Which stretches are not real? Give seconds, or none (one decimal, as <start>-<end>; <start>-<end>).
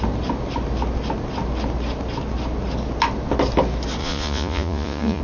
4.0-5.2